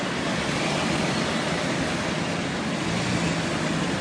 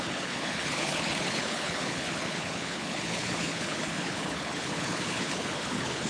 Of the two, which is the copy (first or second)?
second